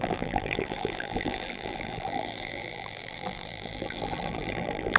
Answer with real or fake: fake